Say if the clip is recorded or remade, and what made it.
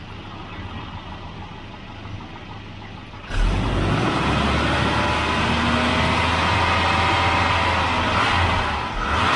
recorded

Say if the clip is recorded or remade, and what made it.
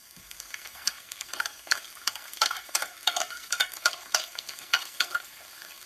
remade, codec, SNAC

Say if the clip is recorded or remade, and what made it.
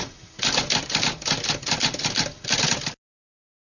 recorded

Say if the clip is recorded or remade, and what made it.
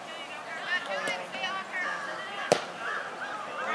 recorded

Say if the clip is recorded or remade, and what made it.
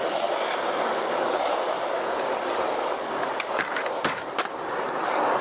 recorded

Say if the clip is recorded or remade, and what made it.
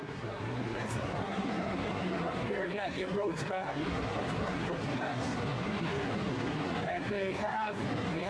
remade, codec, SNAC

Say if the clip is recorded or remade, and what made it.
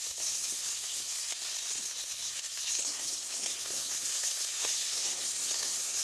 remade, codec, SNAC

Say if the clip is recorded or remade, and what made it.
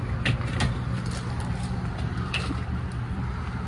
recorded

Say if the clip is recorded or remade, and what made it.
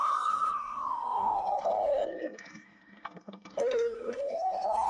remade, codec, SNAC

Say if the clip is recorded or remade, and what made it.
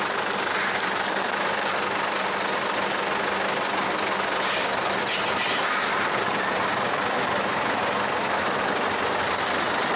recorded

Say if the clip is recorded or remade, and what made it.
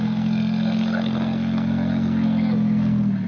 remade, codec, SNAC